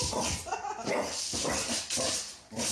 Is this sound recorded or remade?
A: recorded